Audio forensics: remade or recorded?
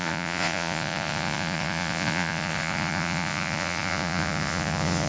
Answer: remade